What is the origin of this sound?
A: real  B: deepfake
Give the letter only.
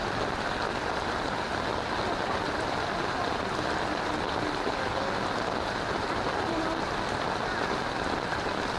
A